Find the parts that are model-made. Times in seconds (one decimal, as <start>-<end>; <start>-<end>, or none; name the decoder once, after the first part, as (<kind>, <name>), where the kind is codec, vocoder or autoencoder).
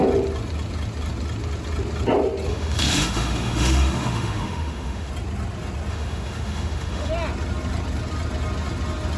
2.5-5.1 (autoencoder, DAC-VAE); 5.9-7.1